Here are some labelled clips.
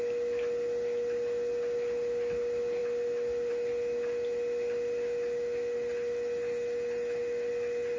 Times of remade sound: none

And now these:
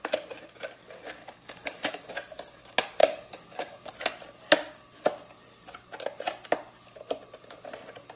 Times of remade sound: 1.2-2.1 (codec, DAC); 3.0-3.9

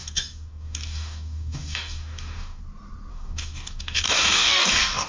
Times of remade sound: 0.0-2.6 (codec, DAC); 3.1-5.1

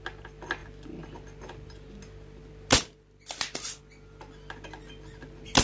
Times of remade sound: none

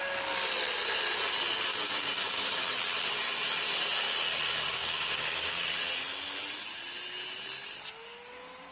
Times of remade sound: 1.7-2.5 (codec, DAC); 4.7-5.5

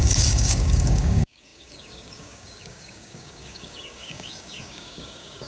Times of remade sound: 0.0-5.5 (codec, DAC)

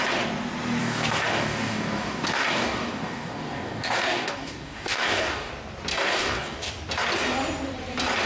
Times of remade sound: 0.8-5.5 (codec, DAC); 5.9-6.7

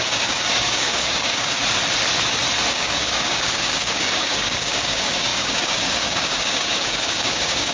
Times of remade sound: 0.0-1.6 (codec, DAC); 2.7-7.7